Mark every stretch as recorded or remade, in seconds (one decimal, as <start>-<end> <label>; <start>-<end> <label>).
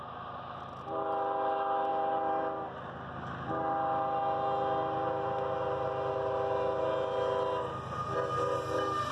0.0-9.1 recorded